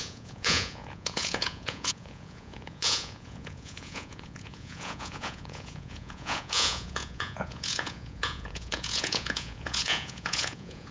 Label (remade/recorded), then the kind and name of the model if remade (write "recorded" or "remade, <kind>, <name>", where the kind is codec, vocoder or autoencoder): remade, vocoder, Vocos